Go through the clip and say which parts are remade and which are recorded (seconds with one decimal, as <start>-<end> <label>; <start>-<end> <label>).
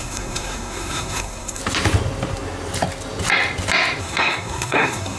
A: 0.0-1.6 remade; 1.6-4.0 recorded; 4.0-5.2 remade